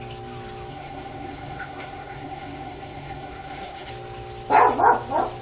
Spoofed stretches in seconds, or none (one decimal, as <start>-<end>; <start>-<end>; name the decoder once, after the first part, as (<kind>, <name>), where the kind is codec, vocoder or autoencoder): 0.7-3.9 (codec, SNAC)